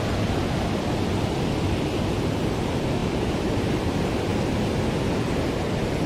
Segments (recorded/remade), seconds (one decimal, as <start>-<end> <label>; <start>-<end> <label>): 0.0-6.1 recorded